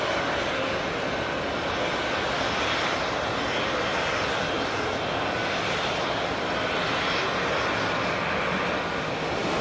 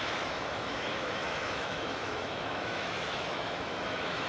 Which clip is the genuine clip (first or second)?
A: first